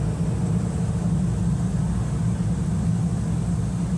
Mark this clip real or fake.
real